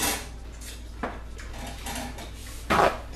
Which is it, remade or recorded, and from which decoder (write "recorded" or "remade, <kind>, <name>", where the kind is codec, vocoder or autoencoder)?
recorded